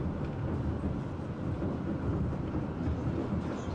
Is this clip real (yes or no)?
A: yes